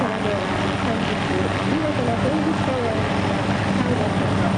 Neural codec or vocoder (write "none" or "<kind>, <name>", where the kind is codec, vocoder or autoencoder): none